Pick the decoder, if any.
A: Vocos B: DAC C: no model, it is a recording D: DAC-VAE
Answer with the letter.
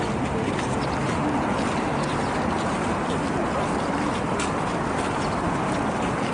C